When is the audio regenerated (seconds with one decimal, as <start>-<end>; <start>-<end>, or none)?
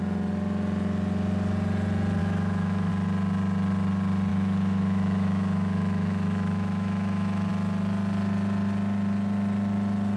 2.2-2.9; 4.3-7.5